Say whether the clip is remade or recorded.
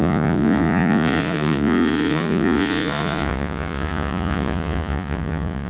remade